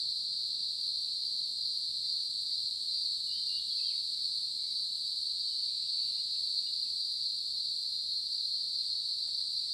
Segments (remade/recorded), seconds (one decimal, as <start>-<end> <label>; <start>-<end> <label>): 0.0-9.7 recorded